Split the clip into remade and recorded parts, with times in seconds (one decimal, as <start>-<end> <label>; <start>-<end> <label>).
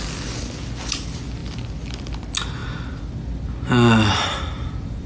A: 0.0-5.1 recorded